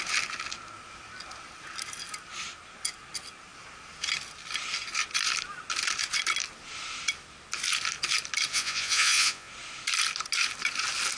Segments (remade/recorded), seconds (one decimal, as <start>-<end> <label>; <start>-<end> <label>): 0.0-8.5 recorded; 8.5-9.5 remade; 9.5-11.2 recorded